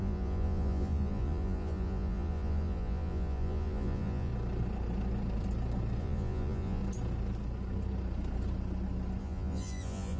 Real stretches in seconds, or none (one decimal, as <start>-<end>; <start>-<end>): 4.3-6.0; 6.8-9.2

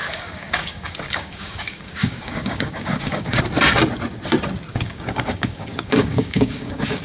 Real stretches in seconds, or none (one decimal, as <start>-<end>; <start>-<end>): 3.4-4.7

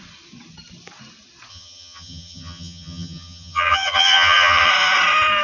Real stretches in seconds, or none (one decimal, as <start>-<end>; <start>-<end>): 0.0-1.5; 4.7-5.4

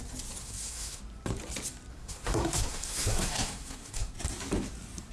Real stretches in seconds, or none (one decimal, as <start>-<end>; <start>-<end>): 0.0-0.4; 1.0-1.9; 4.1-5.1

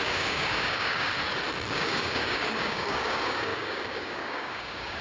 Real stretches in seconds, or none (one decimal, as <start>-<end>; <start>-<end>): 1.1-1.7

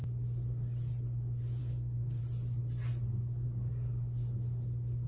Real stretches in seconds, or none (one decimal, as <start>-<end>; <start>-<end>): 0.0-1.6; 2.2-5.1

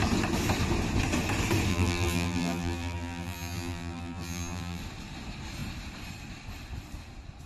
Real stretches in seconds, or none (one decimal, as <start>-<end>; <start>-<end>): 0.0-1.7; 4.8-7.5

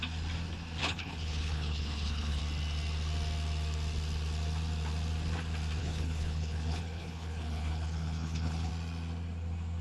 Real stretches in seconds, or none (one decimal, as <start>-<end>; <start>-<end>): 0.0-0.8; 2.4-5.8; 8.7-9.8